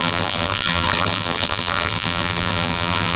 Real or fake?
fake